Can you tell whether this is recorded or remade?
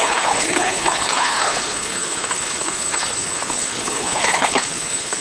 remade